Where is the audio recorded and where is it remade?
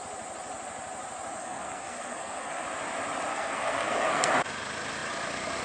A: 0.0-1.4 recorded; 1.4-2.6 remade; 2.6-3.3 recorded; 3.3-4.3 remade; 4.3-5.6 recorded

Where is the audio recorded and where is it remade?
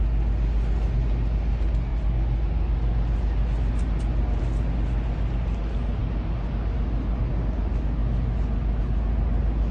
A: 0.0-9.7 recorded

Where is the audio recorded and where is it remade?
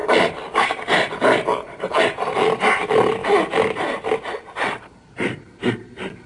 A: 0.0-6.3 recorded